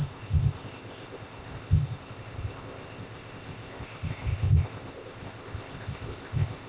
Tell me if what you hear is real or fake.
fake